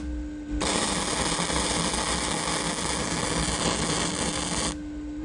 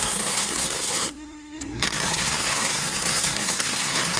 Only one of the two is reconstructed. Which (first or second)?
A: second